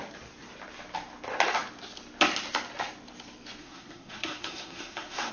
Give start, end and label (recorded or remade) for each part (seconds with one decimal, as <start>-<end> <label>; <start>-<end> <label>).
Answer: 0.0-3.6 recorded; 3.6-5.3 remade